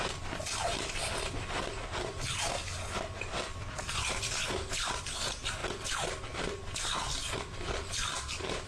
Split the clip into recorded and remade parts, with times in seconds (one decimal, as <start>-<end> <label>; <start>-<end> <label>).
0.0-8.7 recorded